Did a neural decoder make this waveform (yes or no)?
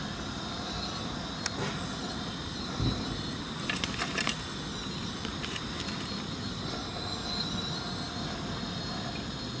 no